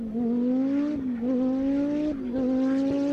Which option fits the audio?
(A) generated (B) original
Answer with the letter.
B